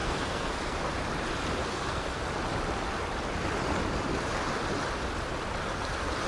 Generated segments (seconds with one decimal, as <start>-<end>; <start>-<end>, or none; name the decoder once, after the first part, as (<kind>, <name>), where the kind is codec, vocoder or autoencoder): 0.0-0.9 (codec, SNAC); 1.6-2.2